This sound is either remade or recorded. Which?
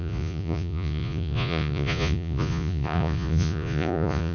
remade